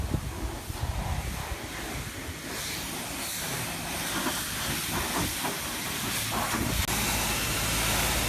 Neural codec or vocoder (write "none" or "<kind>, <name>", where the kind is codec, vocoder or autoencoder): none